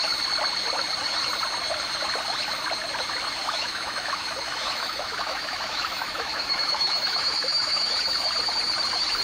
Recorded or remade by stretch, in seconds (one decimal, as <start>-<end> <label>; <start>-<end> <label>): 0.0-3.4 recorded; 3.4-7.9 remade; 7.9-9.2 recorded